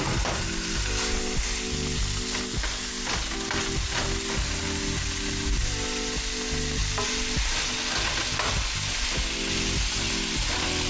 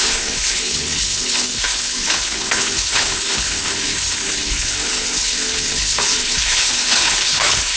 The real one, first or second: first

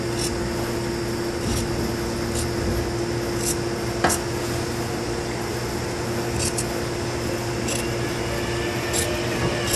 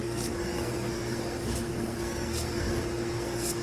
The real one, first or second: first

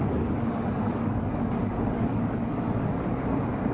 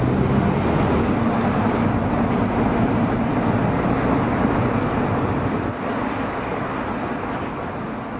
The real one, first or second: second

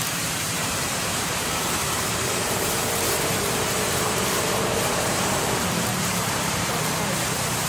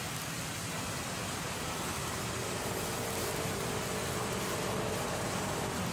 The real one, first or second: second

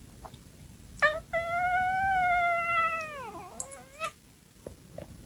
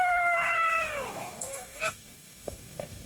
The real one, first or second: first